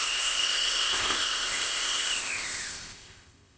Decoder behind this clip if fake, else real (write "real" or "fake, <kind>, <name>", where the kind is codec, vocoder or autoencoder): fake, codec, ZipCodec